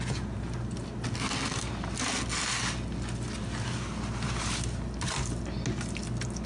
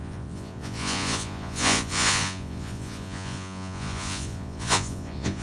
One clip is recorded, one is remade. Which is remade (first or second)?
second